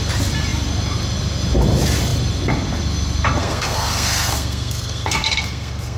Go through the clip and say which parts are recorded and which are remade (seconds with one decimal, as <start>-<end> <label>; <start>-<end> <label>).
0.0-3.4 recorded; 3.4-6.0 remade

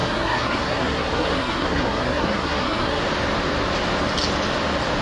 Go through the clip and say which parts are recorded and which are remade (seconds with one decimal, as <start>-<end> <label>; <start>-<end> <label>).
0.0-3.0 remade; 3.0-5.0 recorded

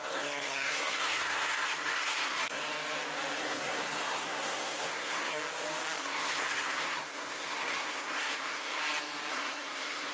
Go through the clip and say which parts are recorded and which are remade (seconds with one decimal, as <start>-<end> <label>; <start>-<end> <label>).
0.0-2.6 remade; 2.6-3.4 recorded; 3.4-5.4 remade; 5.4-6.0 recorded; 6.0-8.8 remade; 8.8-9.3 recorded; 9.3-10.1 remade

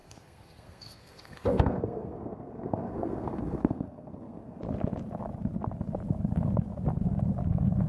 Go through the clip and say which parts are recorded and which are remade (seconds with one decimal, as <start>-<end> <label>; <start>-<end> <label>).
0.0-4.6 remade; 4.6-7.9 recorded

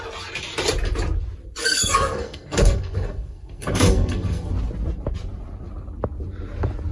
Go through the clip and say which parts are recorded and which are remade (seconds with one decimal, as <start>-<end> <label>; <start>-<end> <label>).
0.0-1.6 recorded; 1.6-4.5 remade; 4.5-6.9 recorded

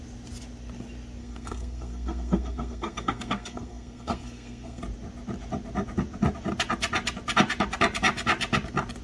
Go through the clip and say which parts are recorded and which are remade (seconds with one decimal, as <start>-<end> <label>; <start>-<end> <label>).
0.0-1.2 recorded; 1.2-4.8 remade; 4.8-9.0 recorded

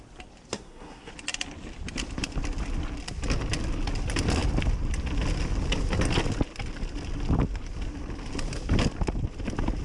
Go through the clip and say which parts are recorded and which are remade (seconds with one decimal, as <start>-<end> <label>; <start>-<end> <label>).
0.0-0.5 recorded; 0.5-1.1 remade; 1.1-9.8 recorded